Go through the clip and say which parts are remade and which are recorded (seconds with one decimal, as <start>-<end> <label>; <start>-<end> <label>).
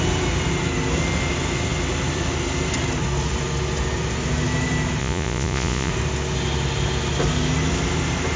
0.0-5.0 recorded; 5.0-5.9 remade; 5.9-8.4 recorded